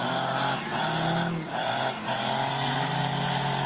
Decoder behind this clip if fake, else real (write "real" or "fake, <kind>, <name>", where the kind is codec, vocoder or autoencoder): real